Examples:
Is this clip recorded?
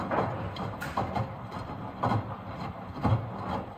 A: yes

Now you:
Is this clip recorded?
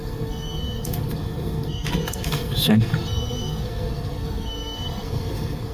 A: no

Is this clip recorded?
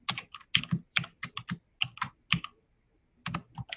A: yes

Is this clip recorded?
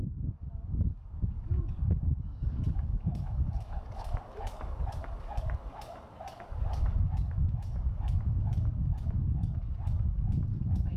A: no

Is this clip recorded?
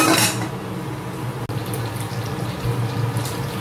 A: yes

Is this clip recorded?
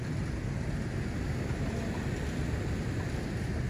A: yes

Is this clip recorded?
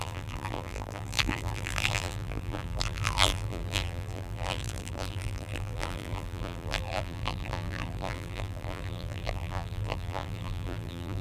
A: no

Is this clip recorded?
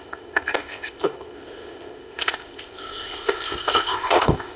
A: no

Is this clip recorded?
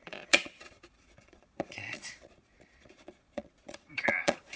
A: no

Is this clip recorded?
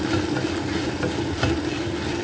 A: yes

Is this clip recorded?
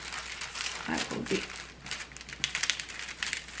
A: yes